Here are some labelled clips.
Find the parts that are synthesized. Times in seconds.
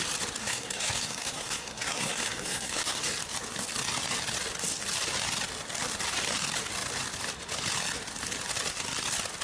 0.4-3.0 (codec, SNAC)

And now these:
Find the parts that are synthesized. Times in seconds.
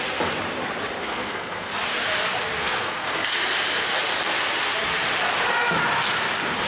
1.0-1.7 (codec, SNAC); 2.6-3.3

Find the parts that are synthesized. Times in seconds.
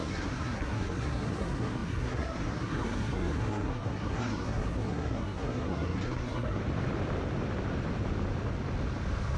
0.0-6.6 (codec, SNAC)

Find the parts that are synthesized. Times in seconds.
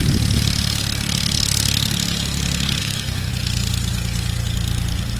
2.8-3.3 (codec, SNAC)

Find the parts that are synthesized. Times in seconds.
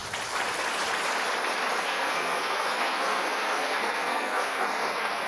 1.8-5.3 (codec, SNAC)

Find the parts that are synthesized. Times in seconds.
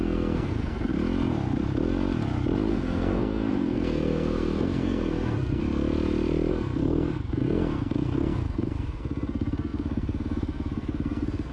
0.0-0.9 (codec, SNAC); 2.7-5.6; 6.5-11.5